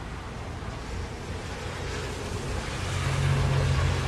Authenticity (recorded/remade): recorded